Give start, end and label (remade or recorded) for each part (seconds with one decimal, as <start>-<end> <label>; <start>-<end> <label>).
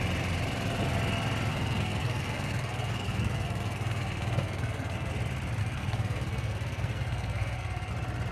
0.0-1.5 recorded; 1.5-5.1 remade; 5.1-5.6 recorded; 5.6-7.9 remade; 7.9-8.3 recorded